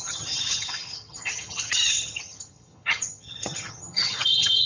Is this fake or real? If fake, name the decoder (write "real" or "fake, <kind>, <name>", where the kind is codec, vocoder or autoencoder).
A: fake, vocoder, HiFi-GAN